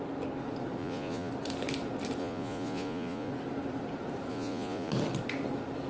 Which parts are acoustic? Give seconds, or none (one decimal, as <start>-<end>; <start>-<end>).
0.0-0.8; 1.3-2.2; 3.3-4.3; 4.9-5.9